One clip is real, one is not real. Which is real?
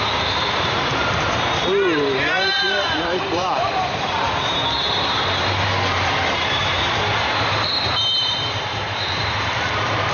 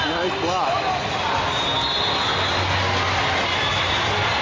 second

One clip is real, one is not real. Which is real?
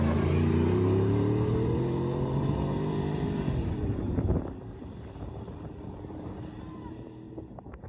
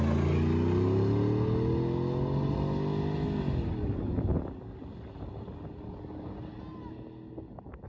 second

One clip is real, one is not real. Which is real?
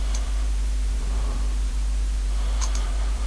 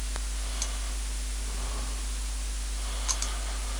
second